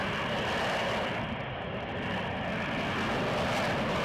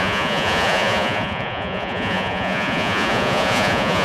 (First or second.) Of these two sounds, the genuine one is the first